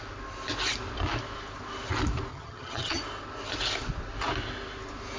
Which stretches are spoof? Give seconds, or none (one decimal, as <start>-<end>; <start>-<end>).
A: 2.3-3.0